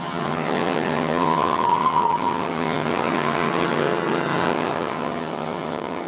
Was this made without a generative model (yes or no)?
no